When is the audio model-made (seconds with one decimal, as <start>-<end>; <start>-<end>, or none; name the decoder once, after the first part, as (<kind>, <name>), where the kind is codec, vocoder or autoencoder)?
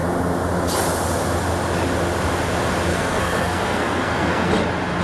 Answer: 2.9-4.5 (codec, SNAC)